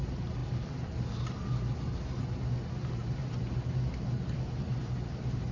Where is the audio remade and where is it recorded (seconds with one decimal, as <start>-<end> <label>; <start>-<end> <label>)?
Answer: 0.0-0.4 remade; 0.4-3.7 recorded; 3.7-5.5 remade